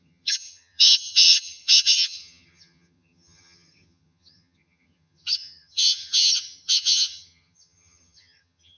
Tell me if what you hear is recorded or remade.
remade